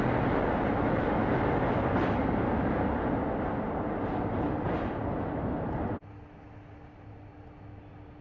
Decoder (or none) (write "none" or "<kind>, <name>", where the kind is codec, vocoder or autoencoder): none